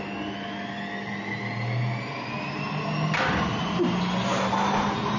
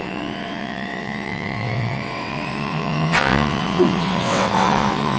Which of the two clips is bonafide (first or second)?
first